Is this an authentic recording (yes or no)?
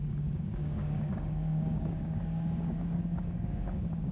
no